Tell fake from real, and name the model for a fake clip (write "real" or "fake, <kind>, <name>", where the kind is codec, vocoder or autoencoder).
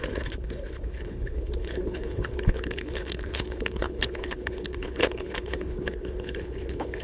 fake, codec, HILCodec